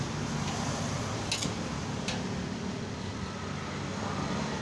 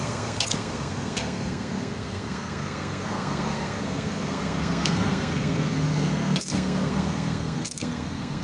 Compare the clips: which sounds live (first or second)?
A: first